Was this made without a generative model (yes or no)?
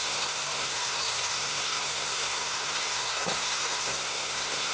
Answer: no